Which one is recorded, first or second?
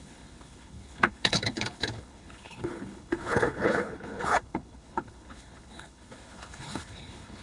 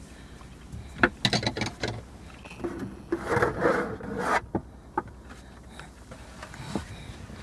second